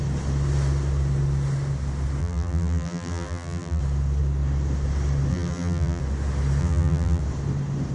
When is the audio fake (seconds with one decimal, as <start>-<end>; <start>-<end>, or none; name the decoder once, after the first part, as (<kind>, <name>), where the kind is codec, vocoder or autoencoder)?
2.2-3.8 (vocoder, BigVGAN v2); 5.3-6.0; 6.6-7.2